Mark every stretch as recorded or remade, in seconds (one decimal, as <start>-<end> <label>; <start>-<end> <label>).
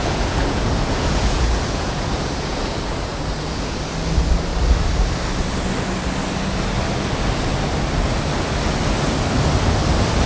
0.0-3.8 remade; 3.8-10.3 recorded